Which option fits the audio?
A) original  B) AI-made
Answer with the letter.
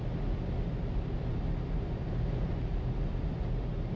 A